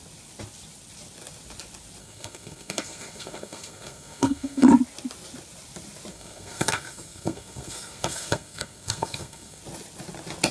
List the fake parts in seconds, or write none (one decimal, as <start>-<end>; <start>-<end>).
2.0-4.7; 6.1-9.6